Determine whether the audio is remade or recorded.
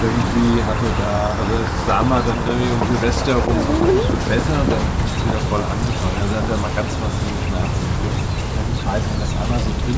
recorded